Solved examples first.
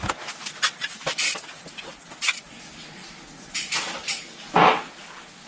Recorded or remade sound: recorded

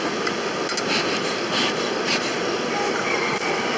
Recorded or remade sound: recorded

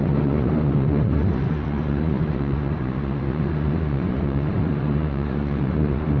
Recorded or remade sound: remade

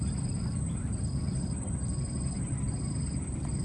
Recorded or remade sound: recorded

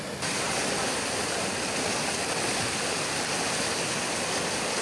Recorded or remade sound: recorded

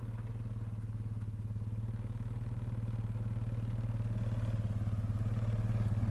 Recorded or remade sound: recorded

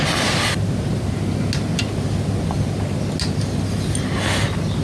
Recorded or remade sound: recorded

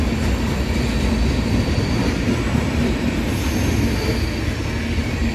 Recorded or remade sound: recorded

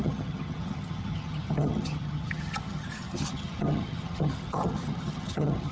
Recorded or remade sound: remade